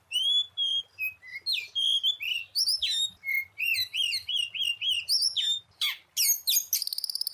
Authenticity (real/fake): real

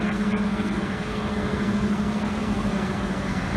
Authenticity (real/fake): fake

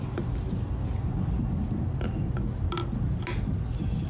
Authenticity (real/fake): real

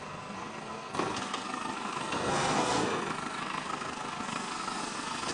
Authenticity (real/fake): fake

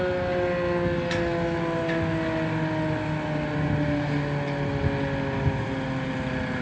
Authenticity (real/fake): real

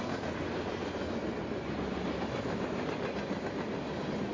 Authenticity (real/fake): real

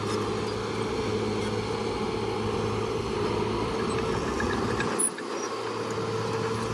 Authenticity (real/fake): real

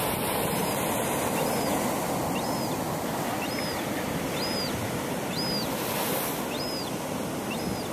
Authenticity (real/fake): real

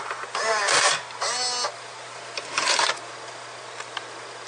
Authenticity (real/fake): real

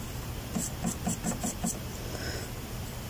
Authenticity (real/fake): real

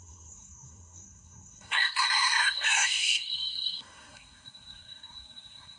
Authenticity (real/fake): fake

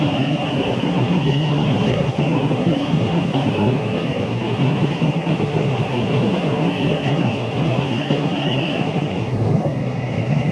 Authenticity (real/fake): fake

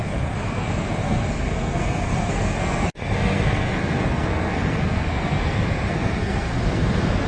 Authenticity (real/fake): fake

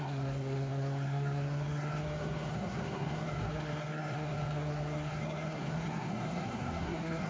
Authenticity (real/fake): fake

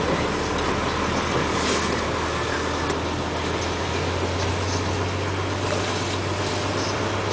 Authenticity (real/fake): real